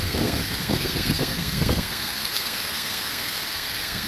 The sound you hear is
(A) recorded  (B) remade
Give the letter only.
B